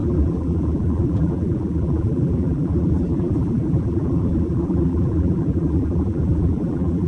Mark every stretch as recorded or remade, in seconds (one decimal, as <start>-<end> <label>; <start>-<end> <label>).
0.0-7.1 remade